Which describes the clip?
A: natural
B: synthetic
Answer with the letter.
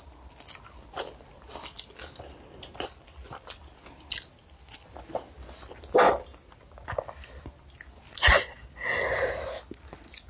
A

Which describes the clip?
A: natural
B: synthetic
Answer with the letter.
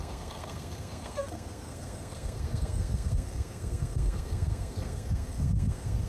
B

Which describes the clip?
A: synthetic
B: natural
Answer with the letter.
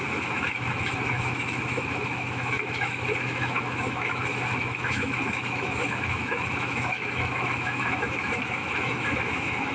A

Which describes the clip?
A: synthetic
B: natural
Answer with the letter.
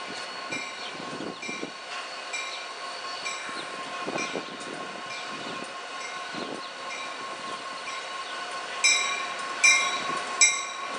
B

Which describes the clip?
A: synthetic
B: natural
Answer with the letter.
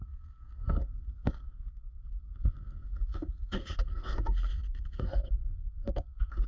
A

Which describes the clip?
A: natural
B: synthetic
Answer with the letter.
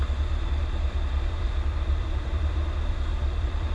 B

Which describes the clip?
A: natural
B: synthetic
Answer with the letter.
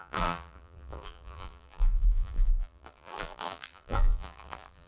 B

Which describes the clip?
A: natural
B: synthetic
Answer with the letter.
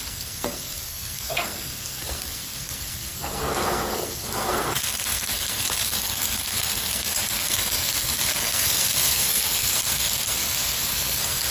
B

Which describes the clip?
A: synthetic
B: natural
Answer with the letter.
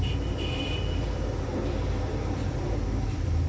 A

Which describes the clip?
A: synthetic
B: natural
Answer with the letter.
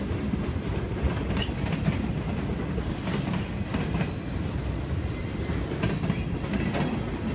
B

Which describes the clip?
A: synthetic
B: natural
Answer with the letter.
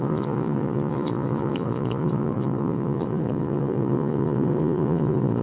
A